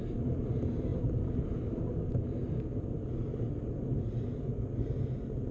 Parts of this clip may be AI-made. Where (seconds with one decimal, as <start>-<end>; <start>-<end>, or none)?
none